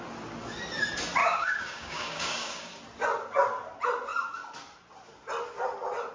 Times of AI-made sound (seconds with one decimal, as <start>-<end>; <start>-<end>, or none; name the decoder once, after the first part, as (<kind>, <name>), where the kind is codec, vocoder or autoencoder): 1.2-2.8 (codec, DAC)